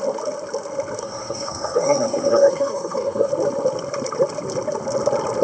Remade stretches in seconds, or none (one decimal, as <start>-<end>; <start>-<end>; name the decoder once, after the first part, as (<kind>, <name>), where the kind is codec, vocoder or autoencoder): 1.0-3.3 (codec, SNAC)